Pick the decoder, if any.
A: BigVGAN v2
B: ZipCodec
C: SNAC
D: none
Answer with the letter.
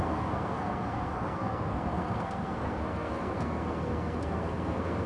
C